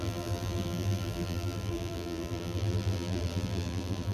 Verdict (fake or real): fake